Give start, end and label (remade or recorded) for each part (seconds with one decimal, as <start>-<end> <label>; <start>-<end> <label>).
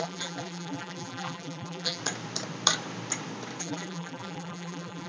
0.0-2.0 remade; 2.0-3.6 recorded; 3.6-5.1 remade